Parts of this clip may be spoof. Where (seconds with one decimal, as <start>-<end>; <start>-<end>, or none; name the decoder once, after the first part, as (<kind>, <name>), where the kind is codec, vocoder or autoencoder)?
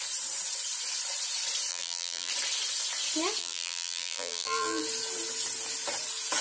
1.7-2.3 (vocoder, BigVGAN v2); 3.4-4.8